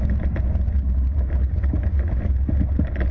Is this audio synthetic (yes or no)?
no